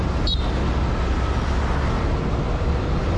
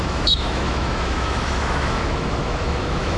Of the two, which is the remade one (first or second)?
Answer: second